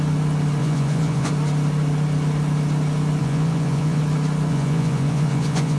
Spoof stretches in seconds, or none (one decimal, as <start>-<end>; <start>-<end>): 0.6-1.3; 3.2-4.0; 4.5-5.8